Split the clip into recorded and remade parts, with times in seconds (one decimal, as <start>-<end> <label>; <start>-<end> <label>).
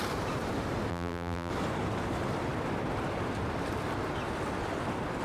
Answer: 0.0-0.9 recorded; 0.9-1.5 remade; 1.5-5.2 recorded